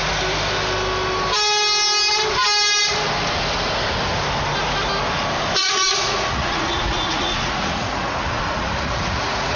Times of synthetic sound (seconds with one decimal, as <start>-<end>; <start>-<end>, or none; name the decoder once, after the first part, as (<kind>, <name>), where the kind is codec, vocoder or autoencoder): 5.6-9.6 (vocoder, Vocos)